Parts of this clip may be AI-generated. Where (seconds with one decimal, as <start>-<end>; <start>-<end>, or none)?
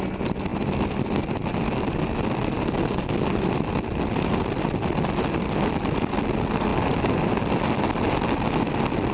none